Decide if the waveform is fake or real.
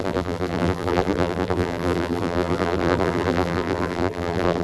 fake